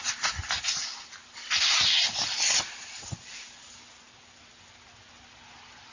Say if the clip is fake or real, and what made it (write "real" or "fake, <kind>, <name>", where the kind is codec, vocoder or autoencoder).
real